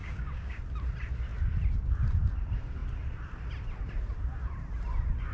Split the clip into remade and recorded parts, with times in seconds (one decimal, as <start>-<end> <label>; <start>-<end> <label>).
0.0-0.6 remade; 0.6-5.3 recorded